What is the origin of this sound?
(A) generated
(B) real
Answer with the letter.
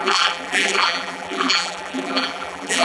A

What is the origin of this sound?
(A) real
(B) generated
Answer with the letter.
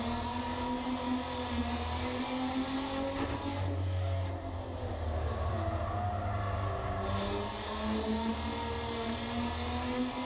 A